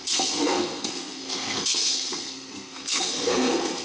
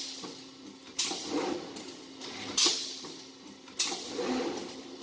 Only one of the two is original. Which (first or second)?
second